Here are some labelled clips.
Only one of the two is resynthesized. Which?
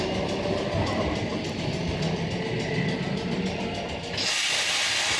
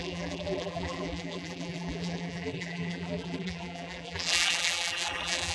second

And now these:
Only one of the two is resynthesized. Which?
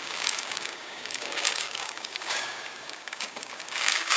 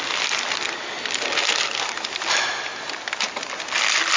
first